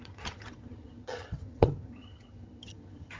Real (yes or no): no